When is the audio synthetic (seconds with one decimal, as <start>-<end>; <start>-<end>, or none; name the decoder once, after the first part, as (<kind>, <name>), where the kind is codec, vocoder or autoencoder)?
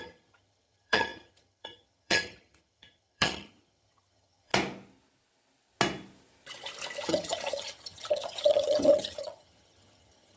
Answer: 0.0-4.5 (vocoder, HiFi-GAN); 7.0-10.4